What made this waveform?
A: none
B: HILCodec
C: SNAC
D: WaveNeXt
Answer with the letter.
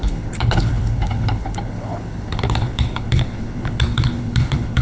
B